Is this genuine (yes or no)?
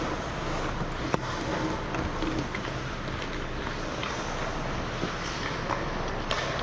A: yes